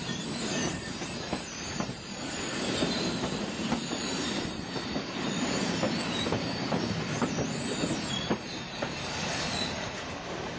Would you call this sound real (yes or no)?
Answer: no